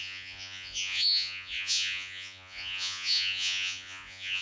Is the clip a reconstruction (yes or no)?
yes